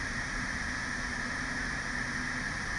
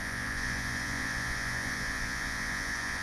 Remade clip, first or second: second